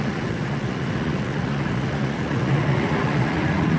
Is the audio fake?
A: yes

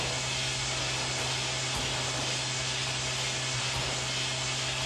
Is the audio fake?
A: no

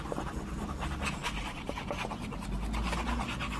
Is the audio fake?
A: no